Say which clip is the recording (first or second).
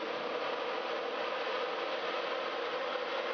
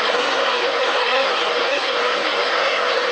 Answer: first